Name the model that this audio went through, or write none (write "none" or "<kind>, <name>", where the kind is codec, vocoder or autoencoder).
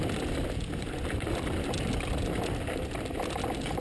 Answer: none